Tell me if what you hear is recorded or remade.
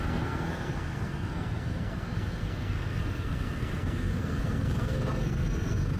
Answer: remade